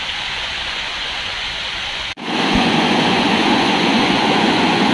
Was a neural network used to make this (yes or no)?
yes